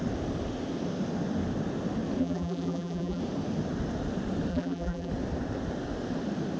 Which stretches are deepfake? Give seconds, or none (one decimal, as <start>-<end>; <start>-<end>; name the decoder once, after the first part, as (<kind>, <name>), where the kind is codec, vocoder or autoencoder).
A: 2.2-3.2 (vocoder, BigVGAN v2); 4.5-5.1